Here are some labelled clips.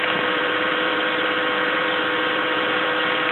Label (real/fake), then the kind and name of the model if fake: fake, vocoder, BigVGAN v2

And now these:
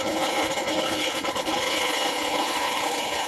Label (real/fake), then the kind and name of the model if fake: fake, codec, HILCodec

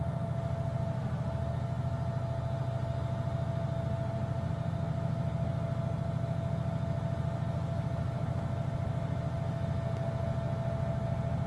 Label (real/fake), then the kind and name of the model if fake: real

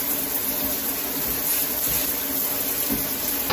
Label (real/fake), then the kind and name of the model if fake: real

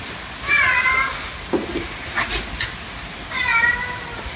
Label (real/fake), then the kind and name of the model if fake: real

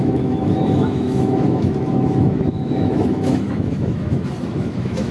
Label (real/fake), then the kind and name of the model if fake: fake, autoencoder, DAC-VAE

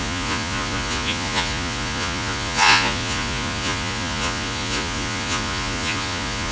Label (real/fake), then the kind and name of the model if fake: fake, vocoder, Vocos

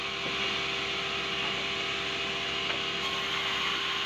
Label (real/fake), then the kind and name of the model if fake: real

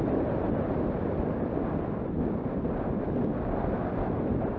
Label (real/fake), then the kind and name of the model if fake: real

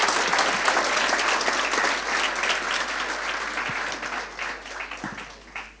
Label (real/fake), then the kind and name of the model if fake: real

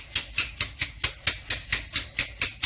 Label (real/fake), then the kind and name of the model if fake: real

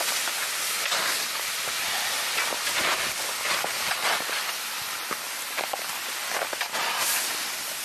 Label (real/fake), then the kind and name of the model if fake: real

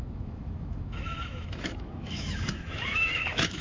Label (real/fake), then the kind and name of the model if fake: fake, autoencoder, DAC-VAE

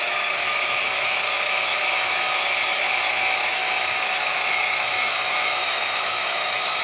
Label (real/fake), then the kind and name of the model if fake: fake, autoencoder, DAC-VAE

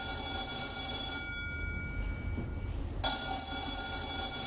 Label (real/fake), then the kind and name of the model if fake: real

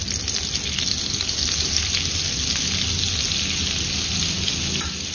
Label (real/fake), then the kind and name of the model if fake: real